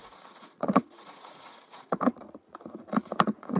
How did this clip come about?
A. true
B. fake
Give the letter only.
B